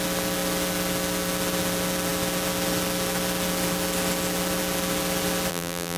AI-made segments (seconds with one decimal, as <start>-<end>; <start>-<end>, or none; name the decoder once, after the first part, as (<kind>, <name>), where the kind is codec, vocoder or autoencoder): 5.5-6.0 (vocoder, BigVGAN v2)